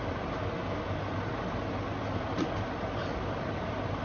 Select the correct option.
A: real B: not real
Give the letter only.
A